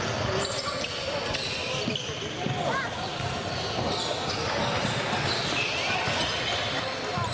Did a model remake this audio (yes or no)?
no